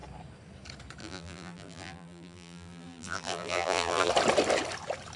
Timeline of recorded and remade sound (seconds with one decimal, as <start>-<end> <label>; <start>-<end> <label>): 0.0-1.0 recorded; 1.0-4.1 remade; 4.1-5.2 recorded